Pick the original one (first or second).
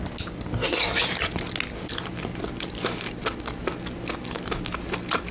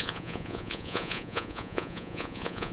first